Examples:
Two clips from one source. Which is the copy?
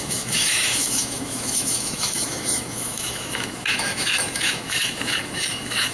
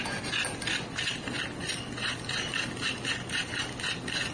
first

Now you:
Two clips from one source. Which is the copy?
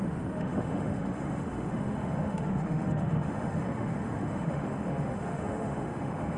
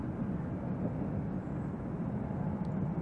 first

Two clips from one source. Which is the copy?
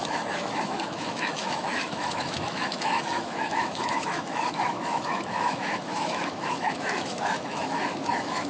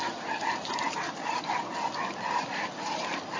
first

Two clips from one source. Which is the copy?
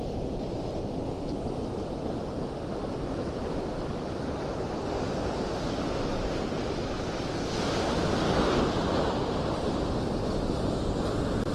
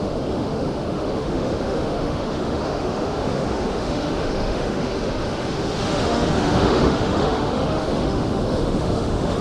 second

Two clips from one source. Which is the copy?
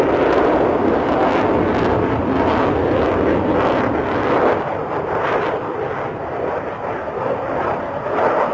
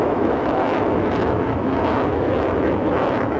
second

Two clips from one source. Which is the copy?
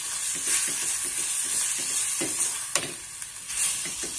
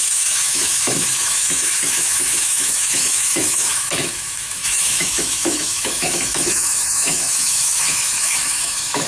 second